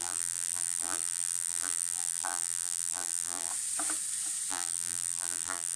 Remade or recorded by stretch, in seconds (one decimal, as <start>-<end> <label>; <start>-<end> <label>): 0.0-3.5 remade; 3.5-4.5 recorded; 4.5-5.8 remade

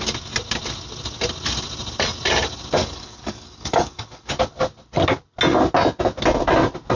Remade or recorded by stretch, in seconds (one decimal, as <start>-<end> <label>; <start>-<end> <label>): 0.0-2.8 recorded; 2.8-4.3 remade; 4.3-7.0 recorded

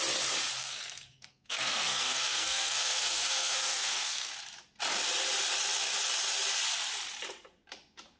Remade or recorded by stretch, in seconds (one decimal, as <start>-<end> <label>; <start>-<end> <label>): 0.0-0.6 recorded; 0.6-4.3 remade; 4.3-8.2 recorded

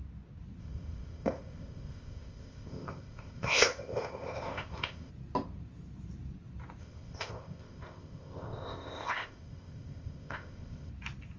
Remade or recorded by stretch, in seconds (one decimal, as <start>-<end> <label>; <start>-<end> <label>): 0.0-0.6 recorded; 0.6-5.1 remade; 5.1-6.8 recorded; 6.8-10.9 remade; 10.9-11.4 recorded

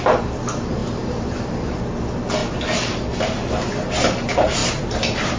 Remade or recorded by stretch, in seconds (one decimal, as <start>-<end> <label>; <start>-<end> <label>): 0.0-0.8 recorded; 0.8-1.9 remade; 1.9-2.4 recorded; 2.4-3.5 remade; 3.5-4.6 recorded; 4.6-5.4 remade

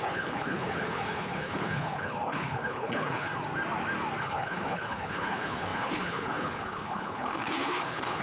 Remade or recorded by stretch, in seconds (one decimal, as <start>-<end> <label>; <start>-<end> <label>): 0.0-3.3 remade; 3.3-4.2 recorded; 4.2-8.2 remade

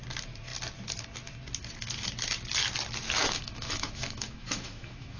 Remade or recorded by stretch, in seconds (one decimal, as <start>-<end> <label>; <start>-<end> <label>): 0.0-3.2 recorded; 3.2-5.2 remade

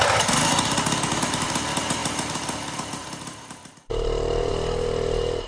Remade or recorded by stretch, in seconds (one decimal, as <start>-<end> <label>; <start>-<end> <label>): 0.0-2.0 recorded; 2.0-4.5 remade; 4.5-5.5 recorded